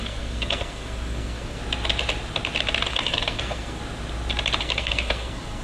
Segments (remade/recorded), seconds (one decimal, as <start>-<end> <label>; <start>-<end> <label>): 0.0-1.6 remade; 1.6-2.9 recorded; 2.9-3.8 remade; 3.8-4.6 recorded; 4.6-5.6 remade